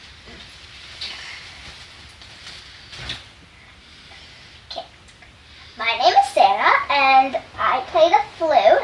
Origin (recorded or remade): recorded